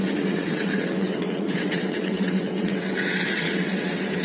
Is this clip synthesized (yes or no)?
yes